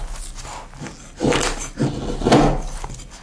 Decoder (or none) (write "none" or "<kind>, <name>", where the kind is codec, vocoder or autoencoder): none